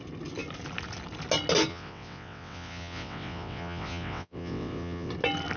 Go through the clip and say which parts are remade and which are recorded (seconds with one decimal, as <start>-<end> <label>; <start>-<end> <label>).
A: 0.0-1.7 recorded; 1.7-5.1 remade; 5.1-5.6 recorded

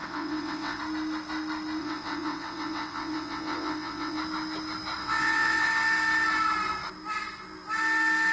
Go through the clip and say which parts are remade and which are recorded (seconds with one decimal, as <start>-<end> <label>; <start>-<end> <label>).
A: 0.0-0.8 remade; 0.8-1.8 recorded; 1.8-4.2 remade; 4.2-5.0 recorded; 5.0-5.7 remade; 5.7-8.3 recorded

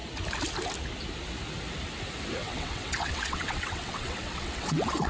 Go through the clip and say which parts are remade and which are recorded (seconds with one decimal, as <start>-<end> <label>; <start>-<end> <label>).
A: 0.0-2.4 recorded; 2.4-5.1 remade